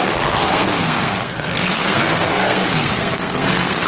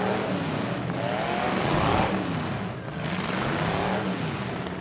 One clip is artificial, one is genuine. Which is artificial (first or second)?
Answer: first